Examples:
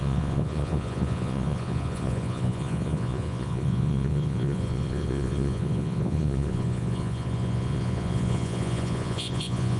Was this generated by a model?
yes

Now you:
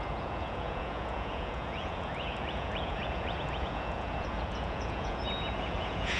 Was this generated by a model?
yes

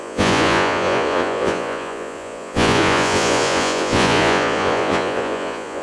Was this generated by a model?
yes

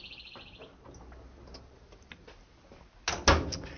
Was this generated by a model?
no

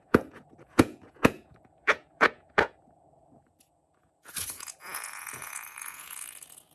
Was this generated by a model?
yes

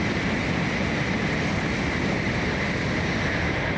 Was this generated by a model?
no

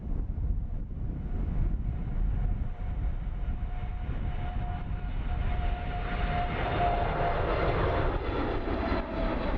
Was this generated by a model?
no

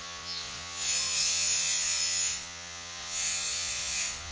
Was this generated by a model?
yes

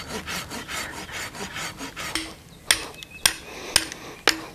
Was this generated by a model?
no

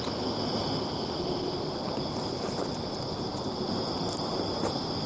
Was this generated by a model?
no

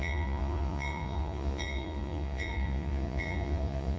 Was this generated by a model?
yes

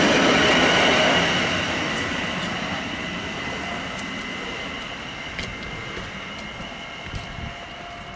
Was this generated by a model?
no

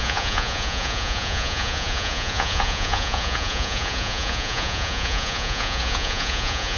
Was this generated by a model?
yes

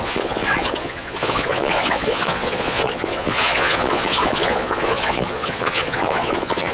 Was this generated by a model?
yes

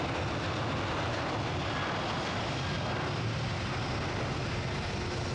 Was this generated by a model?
no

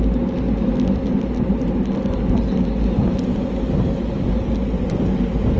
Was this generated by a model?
no